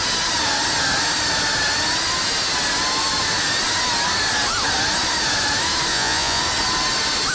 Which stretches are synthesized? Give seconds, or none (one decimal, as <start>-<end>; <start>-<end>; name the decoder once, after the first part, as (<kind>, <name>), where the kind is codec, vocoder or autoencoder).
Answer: 5.9-6.4 (vocoder, Vocos)